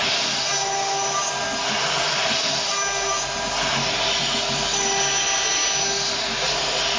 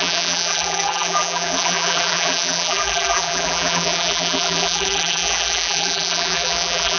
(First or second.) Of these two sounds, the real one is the first